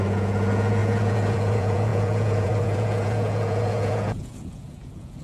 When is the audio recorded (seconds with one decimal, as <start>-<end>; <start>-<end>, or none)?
none